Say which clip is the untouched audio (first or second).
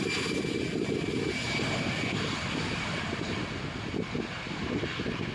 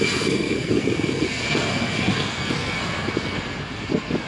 first